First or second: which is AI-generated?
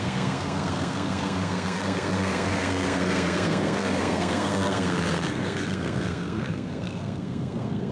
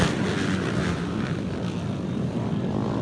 first